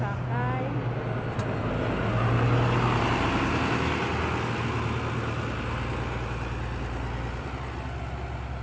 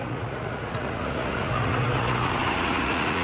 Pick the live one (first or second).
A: first